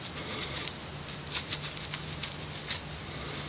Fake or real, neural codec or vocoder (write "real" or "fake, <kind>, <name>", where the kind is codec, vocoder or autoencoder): real